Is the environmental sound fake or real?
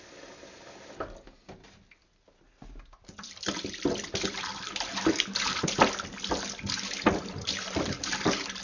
real